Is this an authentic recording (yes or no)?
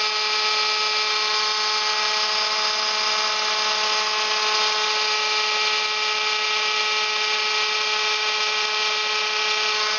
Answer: yes